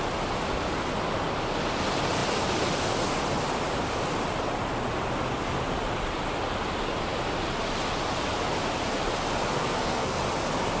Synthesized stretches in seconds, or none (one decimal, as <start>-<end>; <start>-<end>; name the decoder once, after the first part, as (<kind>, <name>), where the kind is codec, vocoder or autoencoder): 9.6-10.2 (codec, SNAC)